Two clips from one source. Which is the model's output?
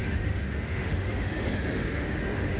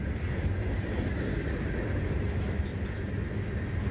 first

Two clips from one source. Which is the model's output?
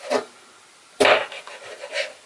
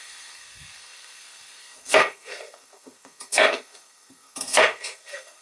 second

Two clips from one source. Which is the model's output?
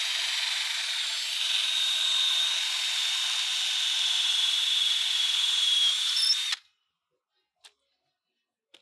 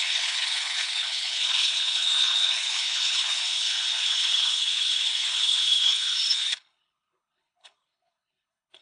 second